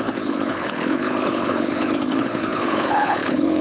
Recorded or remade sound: remade